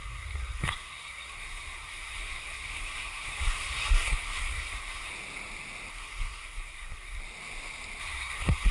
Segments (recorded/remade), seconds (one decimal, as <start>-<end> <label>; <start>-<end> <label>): 0.0-5.1 remade; 5.1-5.9 recorded; 5.9-7.2 remade; 7.2-8.0 recorded; 8.0-8.7 remade